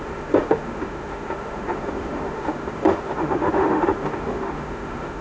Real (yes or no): no